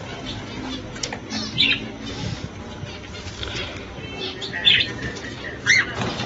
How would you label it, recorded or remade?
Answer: recorded